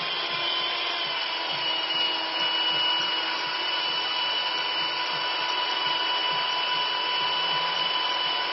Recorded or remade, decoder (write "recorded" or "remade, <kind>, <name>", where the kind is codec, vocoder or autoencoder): recorded